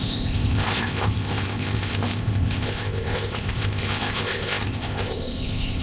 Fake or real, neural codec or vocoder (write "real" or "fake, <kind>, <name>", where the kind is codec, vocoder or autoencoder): fake, codec, ZipCodec